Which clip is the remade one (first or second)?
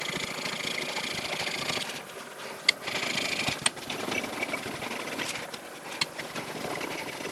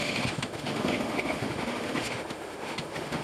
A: second